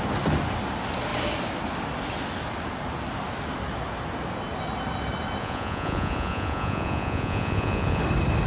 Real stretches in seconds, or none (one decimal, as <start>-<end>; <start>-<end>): 0.0-5.4; 8.0-8.5